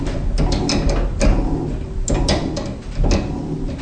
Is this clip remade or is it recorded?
recorded